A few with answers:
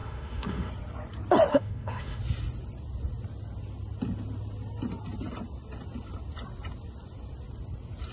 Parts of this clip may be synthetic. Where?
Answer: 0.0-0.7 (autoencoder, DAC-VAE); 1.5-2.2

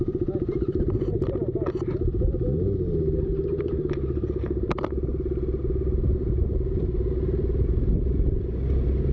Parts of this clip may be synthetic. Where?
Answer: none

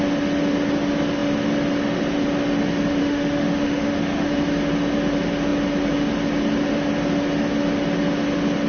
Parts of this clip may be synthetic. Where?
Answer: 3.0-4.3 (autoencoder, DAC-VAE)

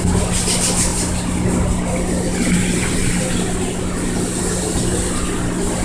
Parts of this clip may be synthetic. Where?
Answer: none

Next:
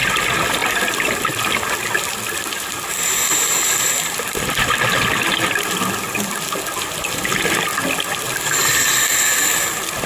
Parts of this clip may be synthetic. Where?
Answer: none

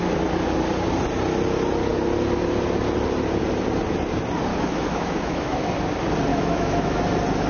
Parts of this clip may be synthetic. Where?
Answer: 4.5-5.7 (autoencoder, DAC-VAE); 6.3-7.0

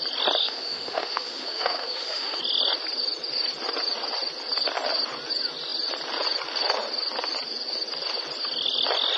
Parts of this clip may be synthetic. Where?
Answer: 0.4-2.4 (autoencoder, DAC-VAE)

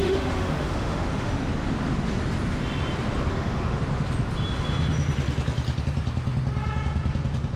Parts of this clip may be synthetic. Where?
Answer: 0.0-1.3 (autoencoder, DAC-VAE); 3.3-3.8